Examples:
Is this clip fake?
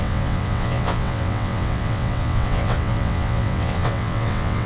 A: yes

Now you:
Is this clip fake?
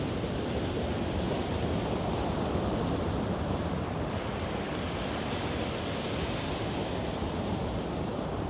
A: no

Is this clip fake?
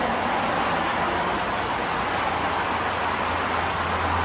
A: no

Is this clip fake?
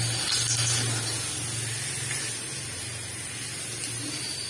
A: no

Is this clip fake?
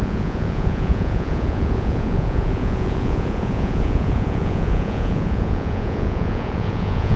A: yes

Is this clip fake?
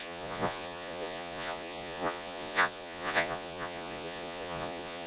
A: yes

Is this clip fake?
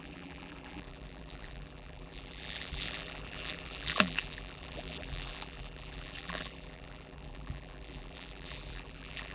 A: yes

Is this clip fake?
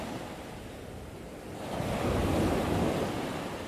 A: no